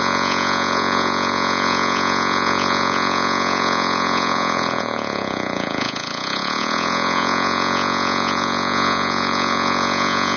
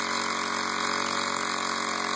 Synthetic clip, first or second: first